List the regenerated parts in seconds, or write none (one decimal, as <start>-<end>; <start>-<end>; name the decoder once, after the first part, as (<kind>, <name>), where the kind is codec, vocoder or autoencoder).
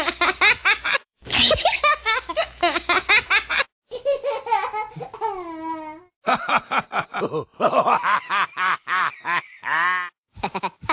0.6-3.1 (autoencoder, DAC-VAE)